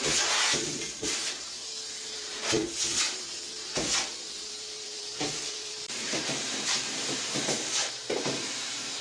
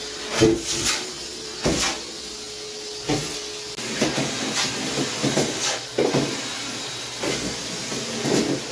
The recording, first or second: second